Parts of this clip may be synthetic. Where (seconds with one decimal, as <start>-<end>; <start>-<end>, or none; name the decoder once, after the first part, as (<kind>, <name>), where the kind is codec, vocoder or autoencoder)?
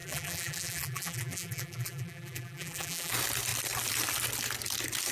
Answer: 0.0-3.1 (vocoder, BigVGAN v2)